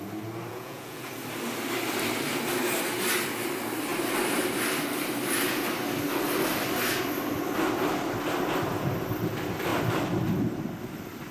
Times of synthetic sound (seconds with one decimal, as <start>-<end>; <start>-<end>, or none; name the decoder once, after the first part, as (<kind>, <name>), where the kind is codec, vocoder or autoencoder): 0.5-1.1 (vocoder, Vocos)